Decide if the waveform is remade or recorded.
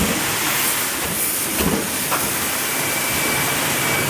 recorded